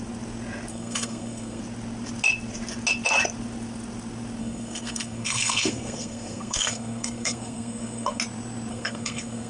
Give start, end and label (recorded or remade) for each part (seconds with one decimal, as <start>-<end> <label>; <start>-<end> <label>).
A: 0.0-0.7 recorded; 0.7-1.6 remade; 1.6-4.4 recorded; 4.4-8.2 remade; 8.2-8.7 recorded; 8.7-9.5 remade